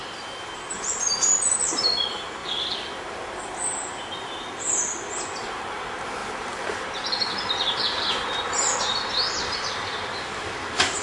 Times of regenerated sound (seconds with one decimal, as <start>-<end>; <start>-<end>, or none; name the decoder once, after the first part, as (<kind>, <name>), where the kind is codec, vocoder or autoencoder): 0.0-0.5 (vocoder, BigVGAN v2); 6.2-10.5